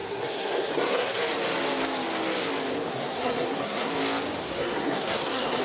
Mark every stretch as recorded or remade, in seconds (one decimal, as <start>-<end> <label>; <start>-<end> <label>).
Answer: 0.0-1.2 remade; 1.2-2.9 recorded; 2.9-3.9 remade; 3.9-4.4 recorded; 4.4-5.6 remade